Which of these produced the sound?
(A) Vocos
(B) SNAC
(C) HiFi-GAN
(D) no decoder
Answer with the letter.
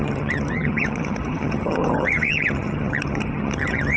C